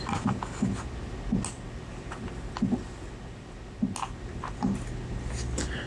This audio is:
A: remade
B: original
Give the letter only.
B